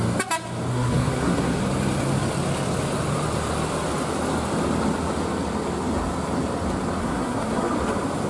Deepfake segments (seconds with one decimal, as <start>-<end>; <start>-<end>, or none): 0.7-1.6; 7.0-7.7